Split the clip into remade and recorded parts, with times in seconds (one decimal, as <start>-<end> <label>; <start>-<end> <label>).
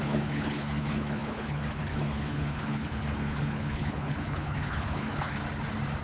0.0-5.4 remade; 5.4-6.0 recorded